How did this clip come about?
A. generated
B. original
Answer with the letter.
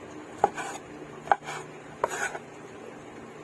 B